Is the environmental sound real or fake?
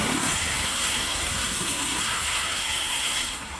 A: fake